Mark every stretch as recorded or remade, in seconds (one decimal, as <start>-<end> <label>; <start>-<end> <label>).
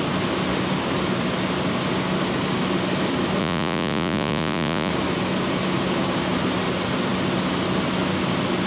0.0-3.4 recorded; 3.4-4.9 remade; 4.9-8.7 recorded